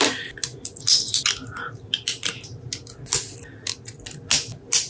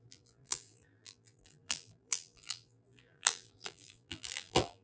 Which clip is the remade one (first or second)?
second